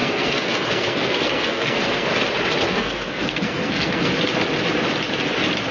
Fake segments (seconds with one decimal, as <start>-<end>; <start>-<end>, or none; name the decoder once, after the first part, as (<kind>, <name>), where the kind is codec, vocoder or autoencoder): 0.0-2.1 (codec, SNAC); 2.7-4.1